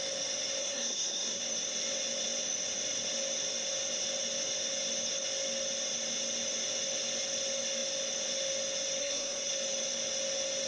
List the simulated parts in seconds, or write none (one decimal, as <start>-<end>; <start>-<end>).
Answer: 0.6-1.4; 9.0-9.5